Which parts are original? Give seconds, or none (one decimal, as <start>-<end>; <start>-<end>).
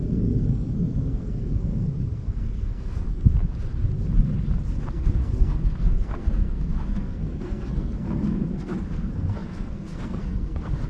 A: 3.3-4.9